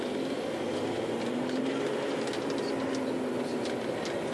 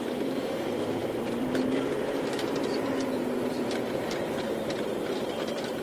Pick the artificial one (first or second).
second